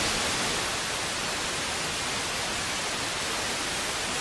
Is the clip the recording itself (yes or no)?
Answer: yes